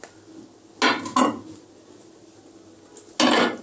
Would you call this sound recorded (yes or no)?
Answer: yes